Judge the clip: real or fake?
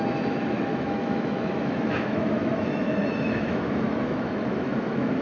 fake